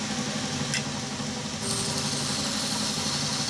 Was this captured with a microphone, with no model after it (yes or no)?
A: yes